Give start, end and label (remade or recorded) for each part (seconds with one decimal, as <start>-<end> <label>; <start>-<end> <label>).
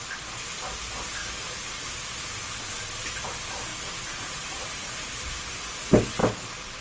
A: 0.0-1.2 recorded; 1.2-2.0 remade; 2.0-3.7 recorded; 3.7-5.4 remade; 5.4-6.8 recorded